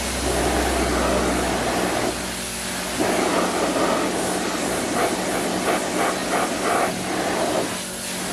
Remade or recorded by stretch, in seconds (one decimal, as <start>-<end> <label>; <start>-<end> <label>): 0.0-8.3 recorded